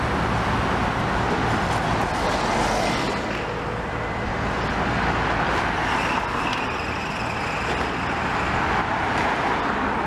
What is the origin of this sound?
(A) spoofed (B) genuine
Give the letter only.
B